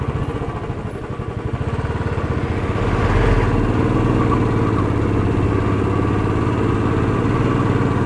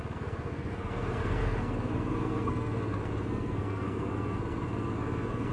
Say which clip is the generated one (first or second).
second